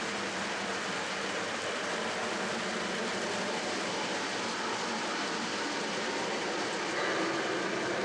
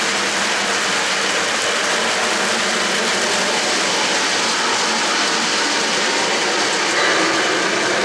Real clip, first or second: second